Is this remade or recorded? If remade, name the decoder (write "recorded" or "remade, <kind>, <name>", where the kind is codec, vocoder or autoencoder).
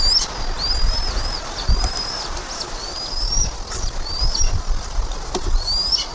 recorded